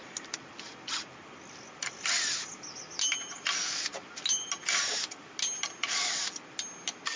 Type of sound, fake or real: real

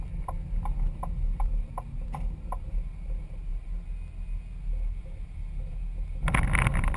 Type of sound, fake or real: real